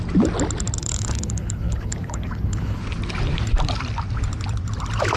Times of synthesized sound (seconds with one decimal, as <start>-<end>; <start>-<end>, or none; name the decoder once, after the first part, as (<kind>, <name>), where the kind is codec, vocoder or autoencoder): 0.8-2.8 (codec, HILCodec)

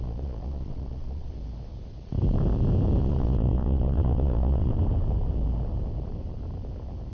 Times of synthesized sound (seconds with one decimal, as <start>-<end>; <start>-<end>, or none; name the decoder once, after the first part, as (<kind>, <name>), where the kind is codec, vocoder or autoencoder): 0.0-1.3 (vocoder, Vocos); 3.0-4.7